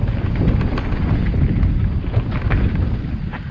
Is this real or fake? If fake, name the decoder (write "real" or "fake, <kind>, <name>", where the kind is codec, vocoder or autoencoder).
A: real